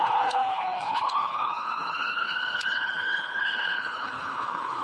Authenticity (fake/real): fake